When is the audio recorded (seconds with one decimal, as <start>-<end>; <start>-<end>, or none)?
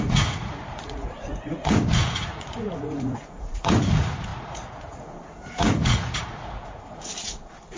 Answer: none